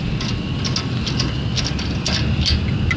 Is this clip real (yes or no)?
yes